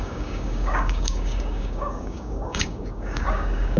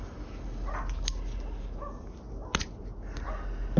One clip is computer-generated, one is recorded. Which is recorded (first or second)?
second